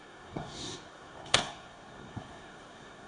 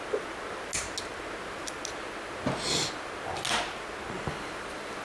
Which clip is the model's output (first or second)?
first